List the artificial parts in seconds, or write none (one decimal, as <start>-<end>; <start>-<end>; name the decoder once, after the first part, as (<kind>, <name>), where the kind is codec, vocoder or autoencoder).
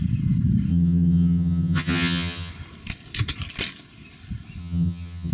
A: 0.7-2.5 (vocoder, HiFi-GAN); 4.6-5.3